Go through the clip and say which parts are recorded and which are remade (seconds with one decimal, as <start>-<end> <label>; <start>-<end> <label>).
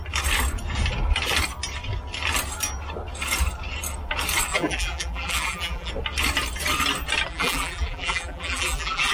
0.0-4.5 recorded; 4.5-5.9 remade; 5.9-7.3 recorded; 7.3-9.1 remade